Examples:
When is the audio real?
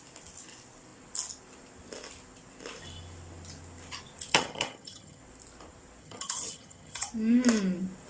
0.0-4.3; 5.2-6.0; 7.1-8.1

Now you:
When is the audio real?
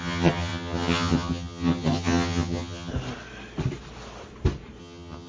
2.9-4.8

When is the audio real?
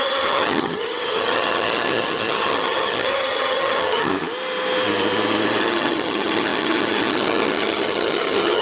4.1-5.6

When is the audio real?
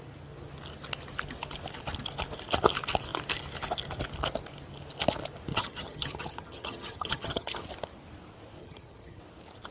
0.0-5.5; 7.6-8.6; 9.2-9.7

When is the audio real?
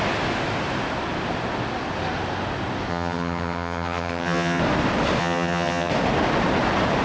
0.0-2.9; 4.6-5.2; 5.9-7.0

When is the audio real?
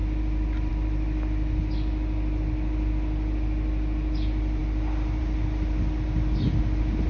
0.0-7.1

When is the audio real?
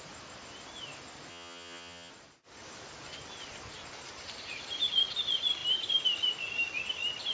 0.0-1.3; 2.1-7.3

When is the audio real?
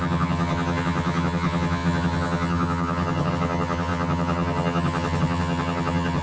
none